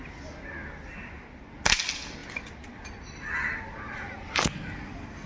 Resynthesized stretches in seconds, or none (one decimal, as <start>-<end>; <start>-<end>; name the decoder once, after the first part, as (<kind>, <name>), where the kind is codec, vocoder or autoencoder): none

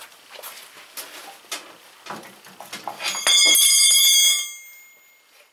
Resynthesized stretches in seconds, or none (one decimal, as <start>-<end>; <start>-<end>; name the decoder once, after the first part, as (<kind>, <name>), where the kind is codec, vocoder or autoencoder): none

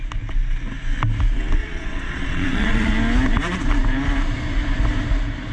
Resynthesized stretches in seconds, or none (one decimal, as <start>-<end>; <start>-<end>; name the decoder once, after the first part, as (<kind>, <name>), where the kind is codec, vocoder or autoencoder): 1.6-2.9 (vocoder, Vocos)

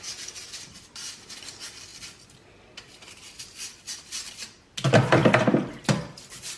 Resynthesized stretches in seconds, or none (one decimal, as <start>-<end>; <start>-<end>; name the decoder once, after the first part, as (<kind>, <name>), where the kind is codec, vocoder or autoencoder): none

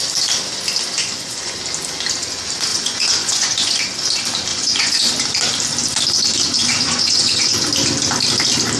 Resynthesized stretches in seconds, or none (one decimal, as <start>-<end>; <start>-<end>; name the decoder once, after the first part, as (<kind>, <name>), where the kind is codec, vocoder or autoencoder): 1.0-1.6 (vocoder, Vocos); 2.7-3.8; 4.5-5.2; 6.6-7.7

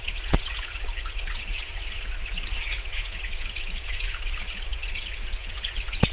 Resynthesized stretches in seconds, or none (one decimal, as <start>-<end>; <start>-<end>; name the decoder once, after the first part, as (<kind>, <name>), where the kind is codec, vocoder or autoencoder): 0.0-6.1 (vocoder, Vocos)